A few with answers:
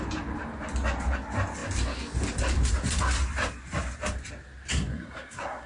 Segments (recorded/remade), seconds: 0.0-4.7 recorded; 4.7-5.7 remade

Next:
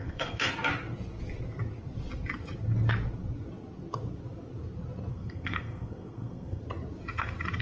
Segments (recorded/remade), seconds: 0.0-0.5 remade; 0.5-5.1 recorded; 5.1-6.6 remade; 6.6-7.6 recorded

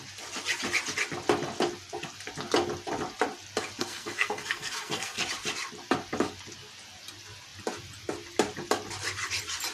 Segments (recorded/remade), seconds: 0.0-3.8 recorded; 3.8-5.2 remade; 5.2-9.7 recorded

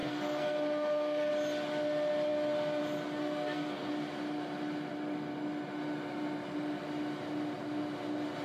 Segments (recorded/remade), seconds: 0.0-1.3 remade; 1.3-3.2 recorded; 3.2-3.9 remade; 3.9-8.4 recorded